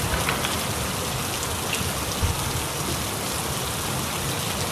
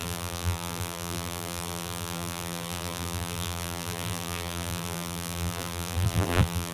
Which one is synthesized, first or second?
second